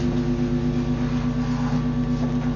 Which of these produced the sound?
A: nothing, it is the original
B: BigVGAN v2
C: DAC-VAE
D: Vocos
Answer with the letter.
A